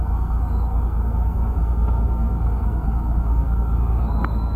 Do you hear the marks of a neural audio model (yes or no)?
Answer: yes